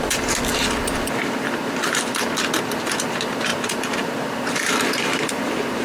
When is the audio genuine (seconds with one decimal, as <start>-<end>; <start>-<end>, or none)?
2.1-2.6